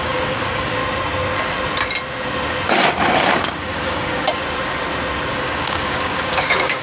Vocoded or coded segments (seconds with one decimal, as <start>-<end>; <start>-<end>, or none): 0.0-0.8; 3.0-4.4; 5.3-6.8